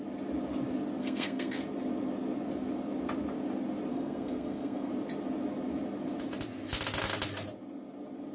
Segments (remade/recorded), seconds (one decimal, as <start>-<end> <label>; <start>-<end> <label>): 0.0-1.0 recorded; 1.0-1.6 remade; 1.6-3.9 recorded; 3.9-4.9 remade; 4.9-8.3 recorded